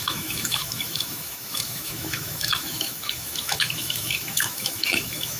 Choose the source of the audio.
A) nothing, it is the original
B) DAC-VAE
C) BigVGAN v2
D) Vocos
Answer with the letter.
B